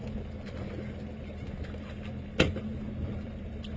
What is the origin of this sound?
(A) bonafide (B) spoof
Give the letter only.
A